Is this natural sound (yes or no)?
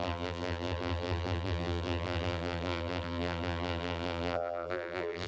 no